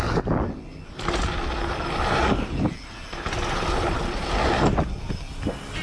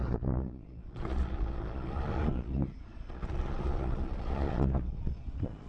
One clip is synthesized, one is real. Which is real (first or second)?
first